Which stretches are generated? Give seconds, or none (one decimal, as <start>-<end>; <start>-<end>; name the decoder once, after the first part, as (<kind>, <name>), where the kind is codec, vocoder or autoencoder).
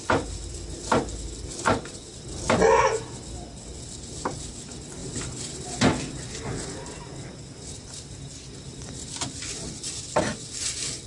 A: none